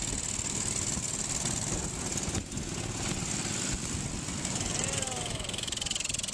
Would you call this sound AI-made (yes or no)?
no